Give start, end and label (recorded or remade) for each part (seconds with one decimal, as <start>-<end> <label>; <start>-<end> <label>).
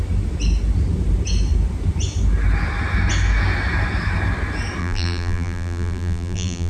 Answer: 0.0-4.8 recorded; 4.8-6.7 remade